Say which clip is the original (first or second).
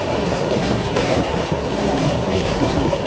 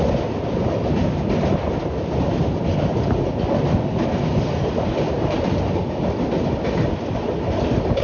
second